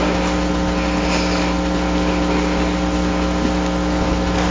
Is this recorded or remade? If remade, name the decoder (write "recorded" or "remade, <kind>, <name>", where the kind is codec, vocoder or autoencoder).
recorded